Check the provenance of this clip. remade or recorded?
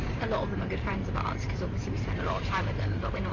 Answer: remade